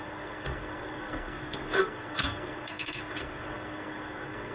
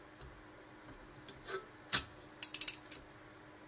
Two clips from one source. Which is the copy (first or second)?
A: first